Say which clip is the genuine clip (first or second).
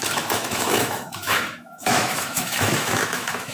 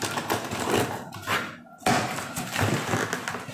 second